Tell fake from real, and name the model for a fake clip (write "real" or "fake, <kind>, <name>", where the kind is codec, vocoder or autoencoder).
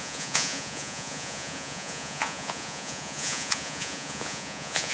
fake, vocoder, Vocos